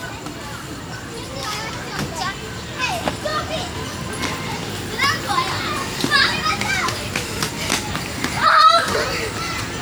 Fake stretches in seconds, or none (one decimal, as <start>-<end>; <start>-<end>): none